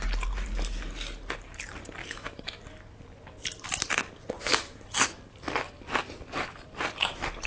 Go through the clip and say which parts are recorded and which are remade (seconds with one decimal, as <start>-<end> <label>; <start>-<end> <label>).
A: 0.0-2.0 recorded; 2.0-2.6 remade; 2.6-4.5 recorded; 4.5-5.2 remade; 5.2-7.5 recorded